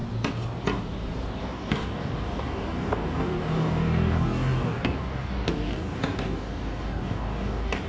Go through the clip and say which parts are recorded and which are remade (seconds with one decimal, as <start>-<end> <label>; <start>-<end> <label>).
0.0-1.4 recorded; 1.4-7.9 remade